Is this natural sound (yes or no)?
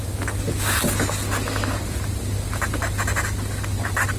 yes